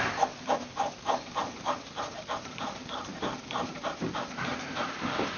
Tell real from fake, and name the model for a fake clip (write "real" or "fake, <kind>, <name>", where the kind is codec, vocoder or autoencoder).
real